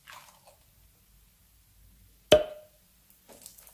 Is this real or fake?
real